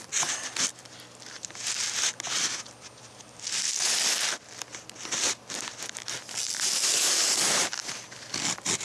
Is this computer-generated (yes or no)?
no